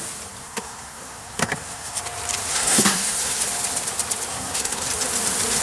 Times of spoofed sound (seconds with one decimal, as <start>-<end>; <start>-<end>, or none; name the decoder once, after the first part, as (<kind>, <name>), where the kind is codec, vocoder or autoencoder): 0.4-2.0 (codec, SNAC); 2.5-3.4; 4.3-4.9